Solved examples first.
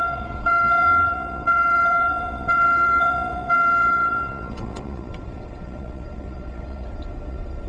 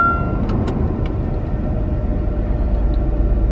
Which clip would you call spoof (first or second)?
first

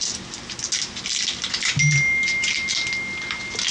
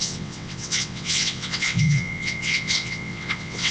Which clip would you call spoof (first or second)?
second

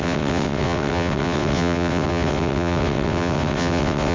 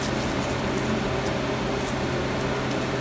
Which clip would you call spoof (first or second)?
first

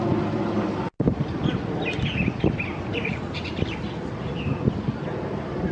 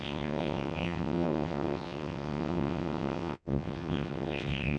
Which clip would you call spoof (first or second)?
second